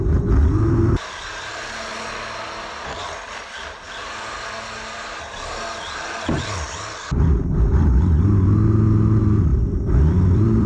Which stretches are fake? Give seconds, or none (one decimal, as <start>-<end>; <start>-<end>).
9.5-10.7